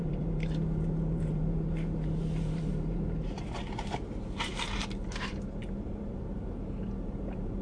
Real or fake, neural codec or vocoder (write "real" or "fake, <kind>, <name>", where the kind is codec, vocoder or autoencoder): fake, vocoder, BigVGAN v2